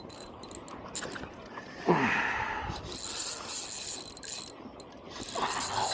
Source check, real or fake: real